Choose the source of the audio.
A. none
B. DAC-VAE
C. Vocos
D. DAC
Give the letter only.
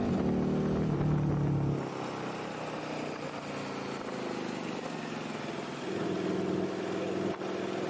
A